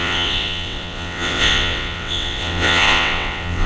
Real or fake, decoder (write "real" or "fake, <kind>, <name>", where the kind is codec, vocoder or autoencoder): fake, vocoder, WaveNeXt